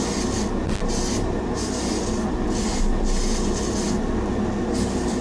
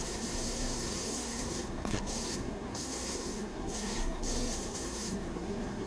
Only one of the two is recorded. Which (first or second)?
first